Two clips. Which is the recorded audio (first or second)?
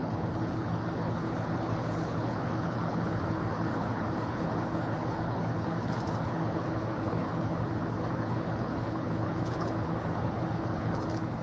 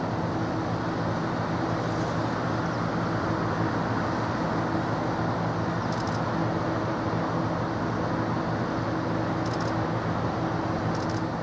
second